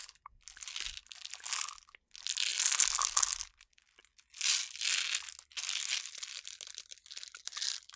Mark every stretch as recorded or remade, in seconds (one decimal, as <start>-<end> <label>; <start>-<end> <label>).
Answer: 0.0-8.0 recorded